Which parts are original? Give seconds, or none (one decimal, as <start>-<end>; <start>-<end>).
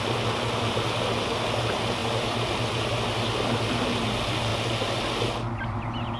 0.0-2.0; 2.6-6.2